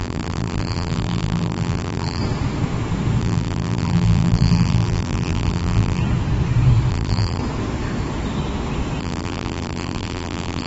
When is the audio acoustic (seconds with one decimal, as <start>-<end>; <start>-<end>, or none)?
2.2-3.2; 6.0-6.9; 7.4-9.0